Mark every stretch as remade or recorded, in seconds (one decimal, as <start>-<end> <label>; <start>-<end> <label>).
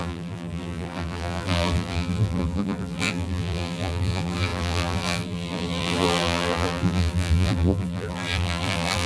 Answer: 0.0-9.1 remade